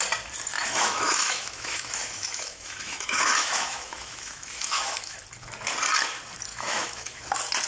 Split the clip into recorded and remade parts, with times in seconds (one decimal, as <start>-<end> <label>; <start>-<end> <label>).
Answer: 0.0-0.6 recorded; 0.6-5.2 remade; 5.2-6.5 recorded; 6.5-7.2 remade; 7.2-7.7 recorded